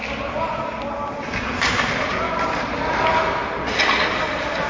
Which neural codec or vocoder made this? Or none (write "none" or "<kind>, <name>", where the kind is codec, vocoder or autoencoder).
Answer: none